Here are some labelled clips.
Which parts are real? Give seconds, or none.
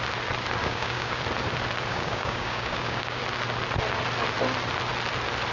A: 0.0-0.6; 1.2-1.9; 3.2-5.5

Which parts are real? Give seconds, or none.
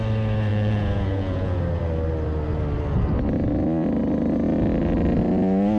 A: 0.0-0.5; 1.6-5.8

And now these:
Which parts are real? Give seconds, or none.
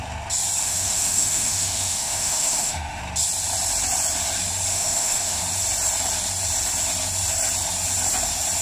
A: 0.0-0.6; 3.0-4.7; 5.4-8.6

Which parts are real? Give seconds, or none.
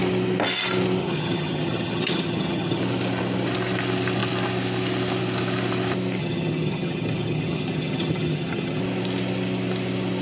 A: 0.0-1.0; 2.8-6.2; 8.8-10.2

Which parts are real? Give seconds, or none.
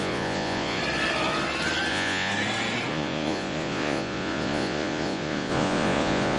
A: 0.8-1.9; 2.3-2.9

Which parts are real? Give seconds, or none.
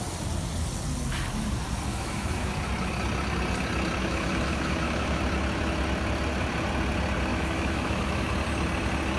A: 0.0-1.9; 2.5-4.0; 5.2-7.3; 8.3-9.2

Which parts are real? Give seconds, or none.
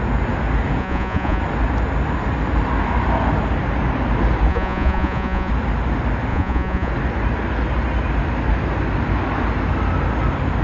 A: 0.0-0.8; 1.4-4.5; 5.5-6.3; 6.9-10.6